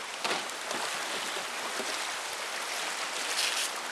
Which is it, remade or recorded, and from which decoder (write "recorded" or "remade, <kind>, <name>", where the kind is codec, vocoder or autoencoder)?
recorded